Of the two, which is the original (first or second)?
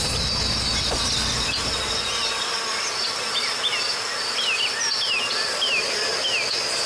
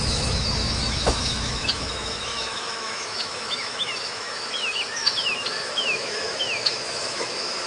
first